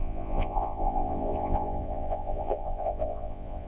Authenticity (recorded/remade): remade